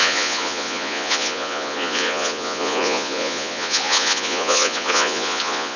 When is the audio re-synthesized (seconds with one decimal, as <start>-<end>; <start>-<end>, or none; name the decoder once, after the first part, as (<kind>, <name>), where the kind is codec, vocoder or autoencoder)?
0.0-5.8 (vocoder, Vocos)